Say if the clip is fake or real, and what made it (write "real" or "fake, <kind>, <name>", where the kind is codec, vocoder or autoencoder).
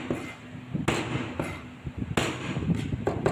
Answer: real